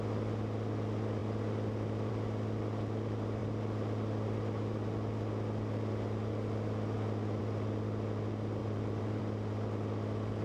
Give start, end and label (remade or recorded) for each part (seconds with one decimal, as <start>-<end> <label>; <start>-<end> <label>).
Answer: 0.0-8.6 recorded; 8.6-9.2 remade; 9.2-10.4 recorded